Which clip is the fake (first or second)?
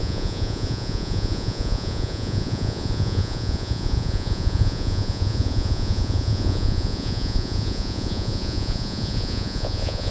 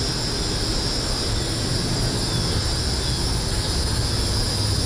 first